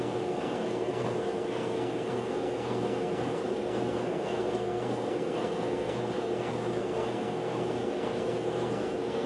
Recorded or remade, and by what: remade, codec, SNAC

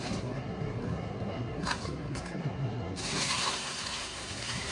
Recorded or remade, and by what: remade, codec, SNAC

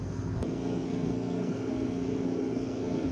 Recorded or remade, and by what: remade, codec, SNAC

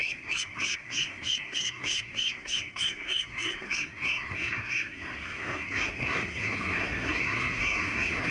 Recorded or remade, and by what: remade, codec, SNAC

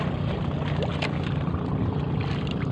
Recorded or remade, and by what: recorded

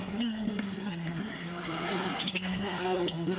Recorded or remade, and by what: remade, codec, SNAC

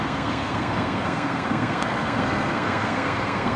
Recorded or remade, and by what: remade, codec, SNAC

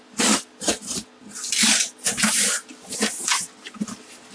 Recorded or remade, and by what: recorded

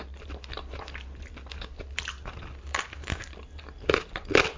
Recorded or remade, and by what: recorded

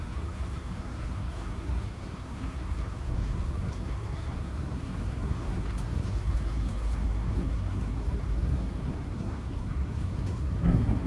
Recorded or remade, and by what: remade, codec, SNAC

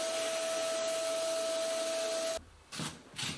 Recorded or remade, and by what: recorded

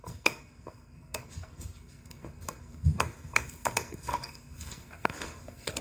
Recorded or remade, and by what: remade, codec, SNAC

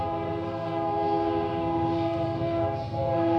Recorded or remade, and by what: remade, codec, SNAC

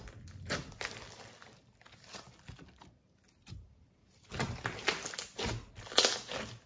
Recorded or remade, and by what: recorded